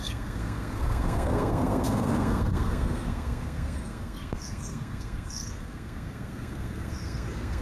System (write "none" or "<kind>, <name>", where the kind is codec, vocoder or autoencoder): codec, SNAC